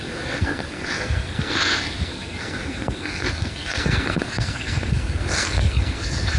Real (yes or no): no